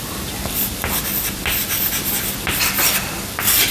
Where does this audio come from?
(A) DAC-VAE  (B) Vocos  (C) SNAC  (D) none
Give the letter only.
D